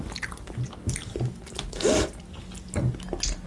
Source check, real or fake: real